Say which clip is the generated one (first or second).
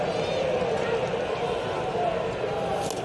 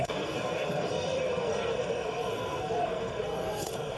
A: second